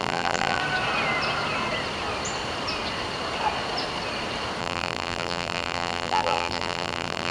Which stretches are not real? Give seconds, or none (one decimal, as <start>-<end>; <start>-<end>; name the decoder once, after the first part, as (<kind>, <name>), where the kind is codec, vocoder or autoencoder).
0.0-0.6 (vocoder, BigVGAN v2); 4.6-7.3